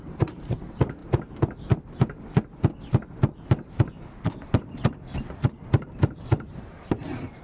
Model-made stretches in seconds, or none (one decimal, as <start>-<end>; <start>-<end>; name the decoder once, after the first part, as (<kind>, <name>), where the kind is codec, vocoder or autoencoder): 0.0-1.0 (vocoder, BigVGAN v2); 4.3-7.4